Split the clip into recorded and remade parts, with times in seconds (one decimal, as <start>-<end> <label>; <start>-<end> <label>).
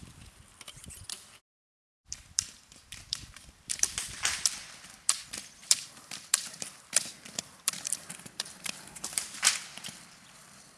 0.0-10.8 remade